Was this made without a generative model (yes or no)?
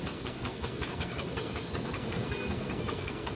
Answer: no